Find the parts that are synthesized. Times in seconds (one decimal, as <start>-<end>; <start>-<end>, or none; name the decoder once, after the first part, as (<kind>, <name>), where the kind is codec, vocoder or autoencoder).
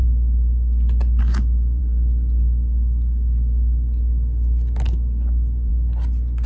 none